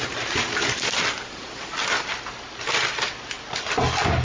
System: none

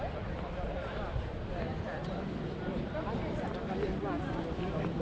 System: none